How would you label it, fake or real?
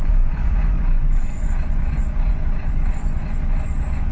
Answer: fake